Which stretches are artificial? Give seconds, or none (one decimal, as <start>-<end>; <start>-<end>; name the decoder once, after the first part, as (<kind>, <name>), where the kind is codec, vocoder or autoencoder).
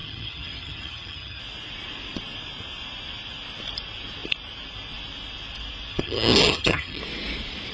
0.0-1.4 (vocoder, HiFi-GAN); 5.9-7.0